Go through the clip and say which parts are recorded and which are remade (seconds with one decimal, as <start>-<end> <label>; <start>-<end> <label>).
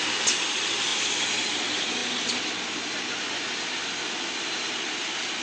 0.0-5.4 recorded